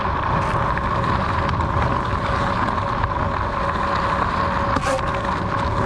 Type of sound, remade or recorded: recorded